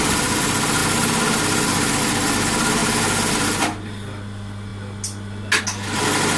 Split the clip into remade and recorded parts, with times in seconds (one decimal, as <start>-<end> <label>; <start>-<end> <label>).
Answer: 0.0-6.4 recorded